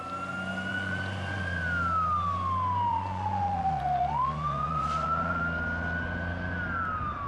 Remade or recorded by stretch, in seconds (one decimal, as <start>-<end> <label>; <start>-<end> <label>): 0.0-0.7 recorded; 0.7-1.4 remade; 1.4-2.9 recorded; 2.9-5.4 remade; 5.4-7.3 recorded